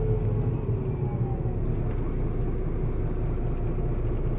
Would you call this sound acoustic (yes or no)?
yes